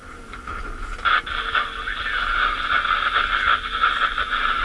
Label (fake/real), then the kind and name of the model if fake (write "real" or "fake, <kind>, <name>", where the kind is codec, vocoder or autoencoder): real